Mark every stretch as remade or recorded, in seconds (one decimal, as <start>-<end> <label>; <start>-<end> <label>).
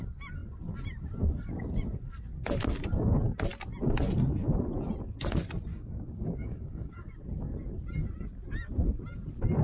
0.0-5.7 recorded; 5.7-7.1 remade; 7.1-9.6 recorded